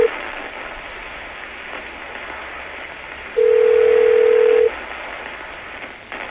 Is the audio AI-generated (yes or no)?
no